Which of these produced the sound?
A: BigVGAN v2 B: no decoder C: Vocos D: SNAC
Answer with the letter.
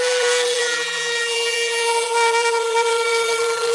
A